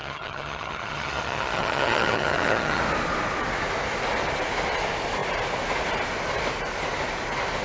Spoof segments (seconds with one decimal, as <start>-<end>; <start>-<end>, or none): 0.0-2.8